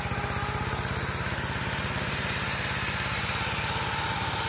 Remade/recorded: recorded